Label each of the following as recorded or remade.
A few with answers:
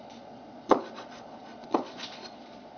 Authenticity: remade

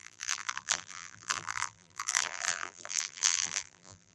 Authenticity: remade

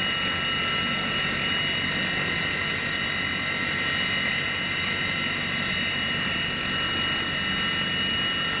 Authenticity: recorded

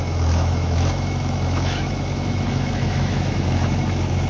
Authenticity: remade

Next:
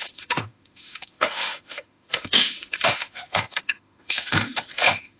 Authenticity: remade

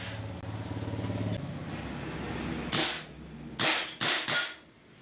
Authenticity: recorded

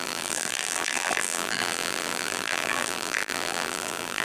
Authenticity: remade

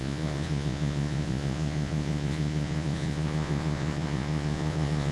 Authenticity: remade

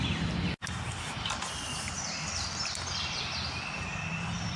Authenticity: recorded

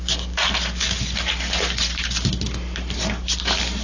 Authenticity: recorded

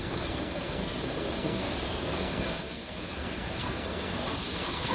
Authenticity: remade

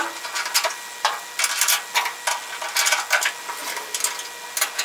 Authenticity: recorded